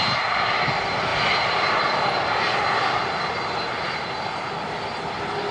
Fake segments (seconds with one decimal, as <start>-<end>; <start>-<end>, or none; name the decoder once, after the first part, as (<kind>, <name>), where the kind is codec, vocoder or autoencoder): none